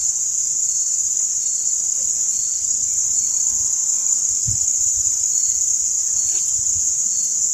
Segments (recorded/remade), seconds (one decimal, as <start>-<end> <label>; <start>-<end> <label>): 0.0-0.8 remade; 0.8-2.1 recorded; 2.1-2.6 remade; 2.6-5.4 recorded; 5.4-7.5 remade